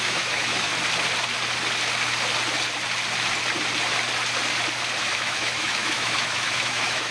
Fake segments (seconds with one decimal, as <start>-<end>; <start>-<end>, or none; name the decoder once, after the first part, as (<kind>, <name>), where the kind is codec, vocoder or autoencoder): 0.0-0.7 (autoencoder, DAC-VAE); 5.0-7.1